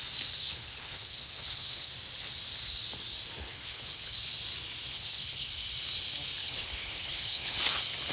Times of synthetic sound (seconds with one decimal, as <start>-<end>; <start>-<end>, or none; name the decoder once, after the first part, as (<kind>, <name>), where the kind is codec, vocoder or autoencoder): 0.4-1.9 (codec, HILCodec); 3.4-4.2; 4.9-5.5; 6.4-7.6